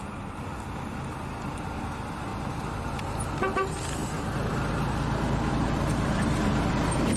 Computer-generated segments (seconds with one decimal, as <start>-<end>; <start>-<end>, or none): 4.0-4.7